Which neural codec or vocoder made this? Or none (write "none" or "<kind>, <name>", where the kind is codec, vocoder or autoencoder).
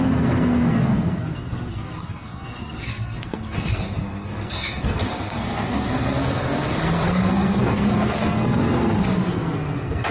codec, SNAC